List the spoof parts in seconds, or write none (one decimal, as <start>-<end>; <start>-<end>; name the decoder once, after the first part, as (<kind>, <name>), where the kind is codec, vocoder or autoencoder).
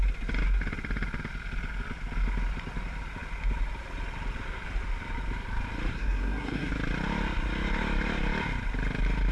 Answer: 5.9-6.7 (codec, SNAC)